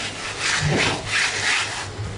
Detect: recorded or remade recorded